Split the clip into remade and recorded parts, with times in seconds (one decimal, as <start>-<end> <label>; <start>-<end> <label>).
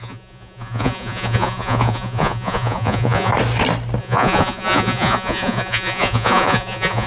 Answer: 0.0-3.3 remade; 3.3-4.0 recorded; 4.0-7.1 remade